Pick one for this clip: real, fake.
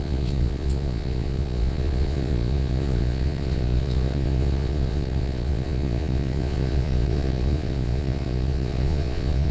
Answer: fake